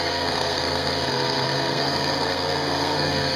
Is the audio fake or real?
fake